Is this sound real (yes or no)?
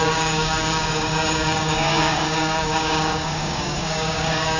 no